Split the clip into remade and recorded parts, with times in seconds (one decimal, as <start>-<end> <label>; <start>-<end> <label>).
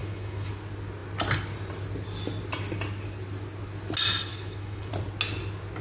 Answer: 0.0-0.5 remade; 0.5-4.3 recorded; 4.3-4.9 remade; 4.9-5.8 recorded